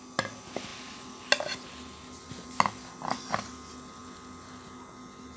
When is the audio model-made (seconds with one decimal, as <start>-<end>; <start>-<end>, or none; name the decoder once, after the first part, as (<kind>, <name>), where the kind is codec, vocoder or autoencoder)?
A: none